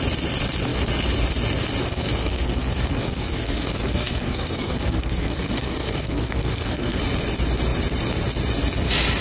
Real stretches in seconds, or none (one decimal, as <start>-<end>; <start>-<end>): 0.0-1.8; 7.0-9.2